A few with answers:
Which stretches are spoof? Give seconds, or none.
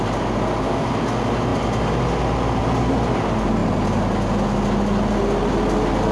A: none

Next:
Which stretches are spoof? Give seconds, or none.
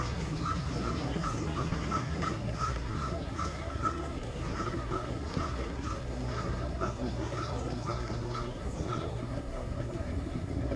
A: 0.0-10.8 (codec, SNAC)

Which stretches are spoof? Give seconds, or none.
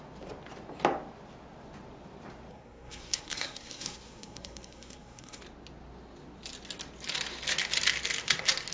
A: 2.5-5.4 (codec, SNAC)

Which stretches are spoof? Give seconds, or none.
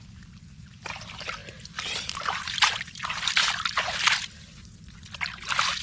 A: none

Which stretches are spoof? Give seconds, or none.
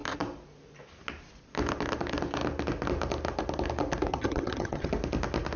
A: 4.1-4.9 (vocoder, HiFi-GAN)